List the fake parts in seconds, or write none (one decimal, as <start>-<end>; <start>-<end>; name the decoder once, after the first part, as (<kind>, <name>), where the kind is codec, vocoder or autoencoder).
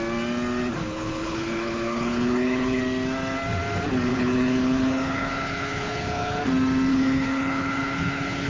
0.8-2.8 (codec, HILCodec); 4.1-6.4; 6.9-8.5